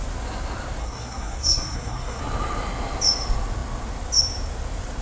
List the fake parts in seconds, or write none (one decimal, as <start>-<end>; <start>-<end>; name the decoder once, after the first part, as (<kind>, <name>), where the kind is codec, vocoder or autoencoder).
0.8-2.2 (codec, SNAC)